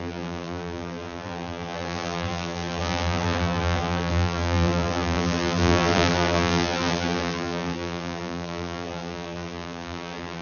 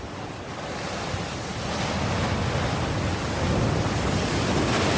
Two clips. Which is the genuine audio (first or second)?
second